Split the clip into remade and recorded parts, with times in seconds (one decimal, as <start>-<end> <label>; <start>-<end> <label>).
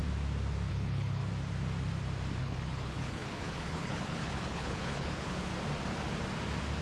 0.0-0.7 recorded; 0.7-1.2 remade; 1.2-2.4 recorded; 2.4-5.5 remade; 5.5-6.8 recorded